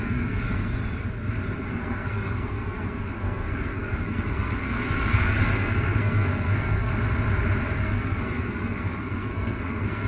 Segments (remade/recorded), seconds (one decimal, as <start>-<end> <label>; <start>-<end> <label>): 0.0-0.8 remade; 0.8-1.7 recorded; 1.7-6.9 remade; 6.9-7.8 recorded; 7.8-10.1 remade